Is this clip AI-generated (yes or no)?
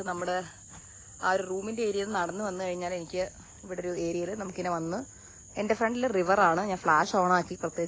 no